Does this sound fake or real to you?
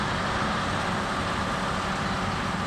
real